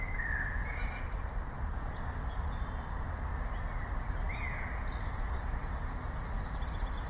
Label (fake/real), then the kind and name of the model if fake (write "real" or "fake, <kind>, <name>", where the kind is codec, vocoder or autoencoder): real